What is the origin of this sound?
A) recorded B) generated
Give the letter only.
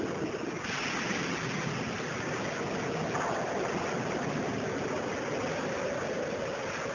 A